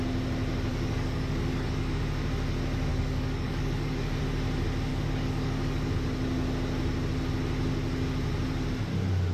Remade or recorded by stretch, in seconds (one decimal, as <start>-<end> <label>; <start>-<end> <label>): 0.0-0.7 recorded; 0.7-2.0 remade; 2.0-2.9 recorded; 2.9-4.2 remade; 4.2-4.9 recorded; 4.9-5.9 remade; 5.9-9.3 recorded